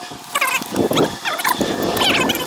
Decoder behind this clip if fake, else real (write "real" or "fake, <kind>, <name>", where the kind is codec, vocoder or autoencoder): real